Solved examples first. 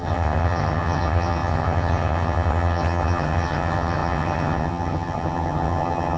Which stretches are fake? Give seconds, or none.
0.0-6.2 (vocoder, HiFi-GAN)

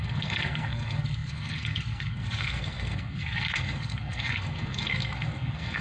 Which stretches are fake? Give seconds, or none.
0.0-5.8 (codec, SNAC)

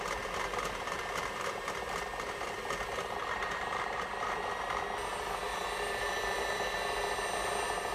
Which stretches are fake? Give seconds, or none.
none